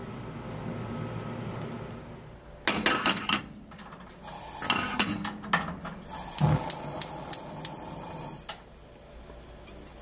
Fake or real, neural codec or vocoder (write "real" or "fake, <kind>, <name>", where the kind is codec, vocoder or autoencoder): real